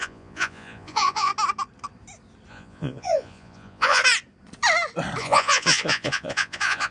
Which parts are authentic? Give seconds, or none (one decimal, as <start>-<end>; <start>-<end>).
1.3-2.5; 4.0-5.2